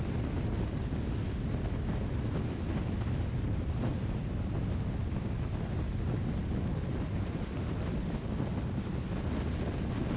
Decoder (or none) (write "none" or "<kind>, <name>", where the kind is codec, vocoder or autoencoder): none